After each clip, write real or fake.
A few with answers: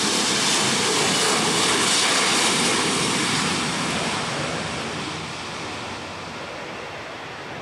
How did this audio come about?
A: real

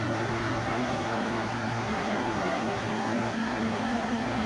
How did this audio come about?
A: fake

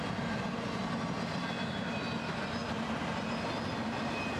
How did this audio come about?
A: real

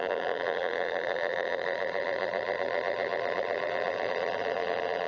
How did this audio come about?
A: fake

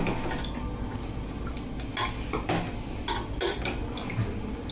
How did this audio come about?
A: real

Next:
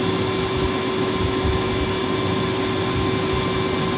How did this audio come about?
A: real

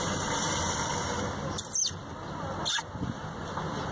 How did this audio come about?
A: real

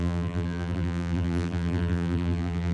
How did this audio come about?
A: fake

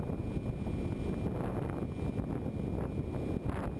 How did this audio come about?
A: real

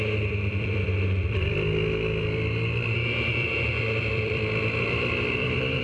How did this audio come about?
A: fake